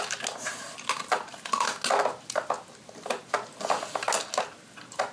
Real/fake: real